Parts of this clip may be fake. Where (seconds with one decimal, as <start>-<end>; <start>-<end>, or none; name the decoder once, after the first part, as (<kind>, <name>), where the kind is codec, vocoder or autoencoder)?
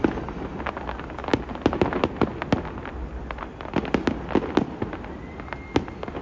none